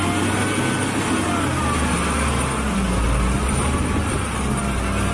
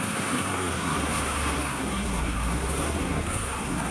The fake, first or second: second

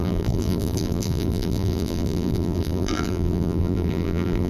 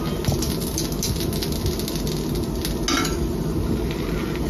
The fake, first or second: first